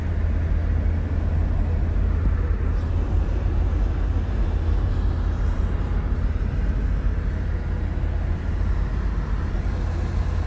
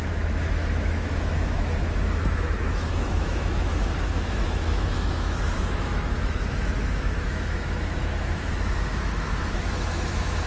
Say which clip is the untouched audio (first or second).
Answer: first